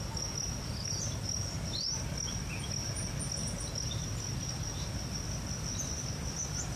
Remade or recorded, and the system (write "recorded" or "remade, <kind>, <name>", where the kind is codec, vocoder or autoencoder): recorded